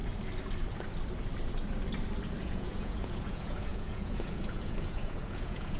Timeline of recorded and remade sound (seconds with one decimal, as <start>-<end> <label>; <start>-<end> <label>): 0.0-2.4 recorded; 2.4-5.8 remade